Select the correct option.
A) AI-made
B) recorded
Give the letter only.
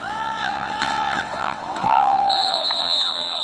A